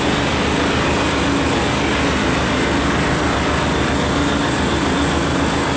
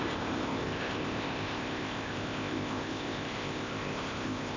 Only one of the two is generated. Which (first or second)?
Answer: second